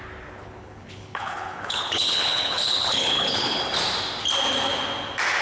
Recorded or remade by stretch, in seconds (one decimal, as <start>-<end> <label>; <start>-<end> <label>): 0.0-0.4 recorded; 0.4-3.6 remade; 3.6-5.4 recorded